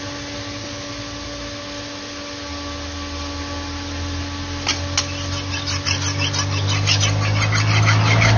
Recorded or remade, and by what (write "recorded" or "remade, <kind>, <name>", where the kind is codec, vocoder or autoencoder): recorded